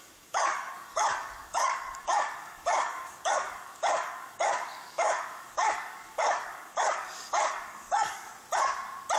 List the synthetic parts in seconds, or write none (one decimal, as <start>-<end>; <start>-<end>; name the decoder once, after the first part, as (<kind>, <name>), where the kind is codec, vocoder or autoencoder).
0.0-8.3 (codec, DAC)